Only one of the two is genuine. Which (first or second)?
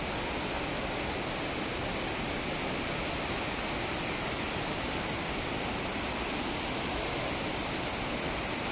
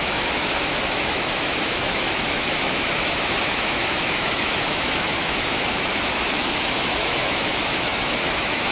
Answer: first